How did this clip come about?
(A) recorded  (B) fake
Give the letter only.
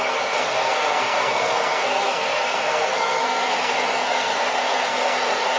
B